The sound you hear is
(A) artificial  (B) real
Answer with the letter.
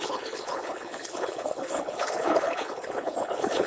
A